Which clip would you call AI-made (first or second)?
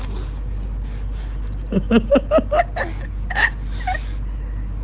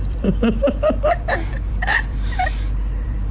second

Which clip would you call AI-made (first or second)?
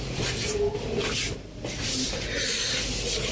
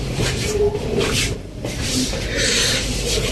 second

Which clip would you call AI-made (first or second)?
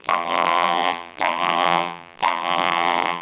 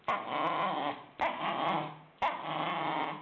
first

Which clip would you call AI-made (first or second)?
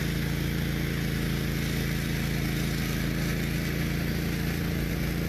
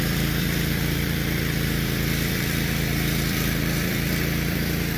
second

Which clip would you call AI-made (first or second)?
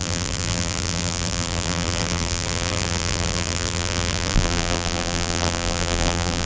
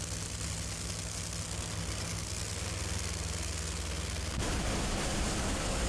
first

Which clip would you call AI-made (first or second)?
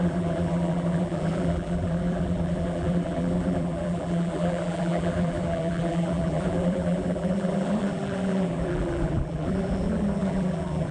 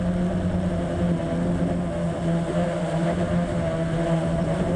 first